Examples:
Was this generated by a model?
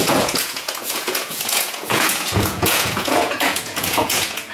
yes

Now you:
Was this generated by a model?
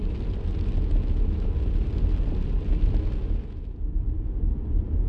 no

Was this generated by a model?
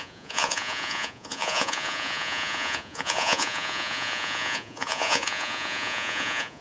yes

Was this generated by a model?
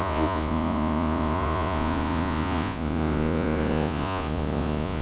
yes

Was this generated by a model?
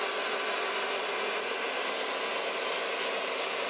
no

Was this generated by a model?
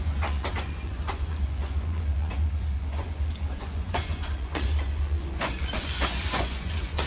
yes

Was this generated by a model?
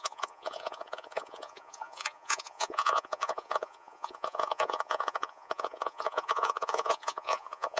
yes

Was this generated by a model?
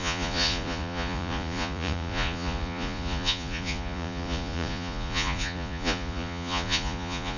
yes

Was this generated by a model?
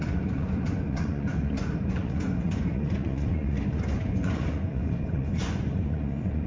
yes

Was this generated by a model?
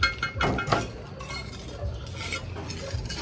no